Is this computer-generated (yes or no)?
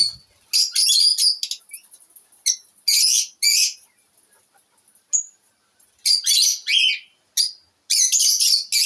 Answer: no